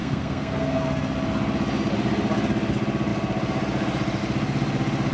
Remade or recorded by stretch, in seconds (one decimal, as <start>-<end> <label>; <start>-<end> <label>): 0.0-0.8 remade; 0.8-5.1 recorded